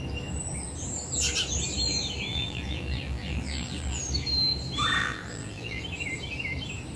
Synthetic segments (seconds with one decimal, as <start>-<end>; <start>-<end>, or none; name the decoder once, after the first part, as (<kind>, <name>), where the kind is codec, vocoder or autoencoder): 2.3-4.0 (vocoder, BigVGAN v2); 5.0-5.8